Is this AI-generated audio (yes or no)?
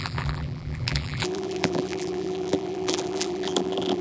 yes